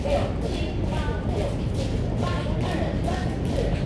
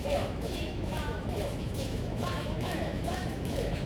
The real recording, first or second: first